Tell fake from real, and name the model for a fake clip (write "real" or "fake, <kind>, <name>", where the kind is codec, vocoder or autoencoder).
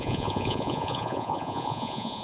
fake, vocoder, Vocos